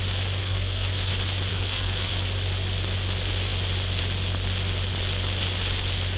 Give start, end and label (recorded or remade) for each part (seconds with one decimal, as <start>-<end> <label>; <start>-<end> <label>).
0.0-0.4 recorded; 0.4-1.1 remade; 1.1-1.5 recorded; 1.5-2.1 remade; 2.1-6.2 recorded